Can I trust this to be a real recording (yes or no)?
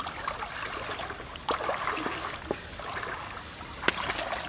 yes